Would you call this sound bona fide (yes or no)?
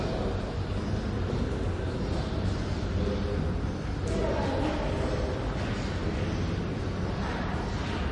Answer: yes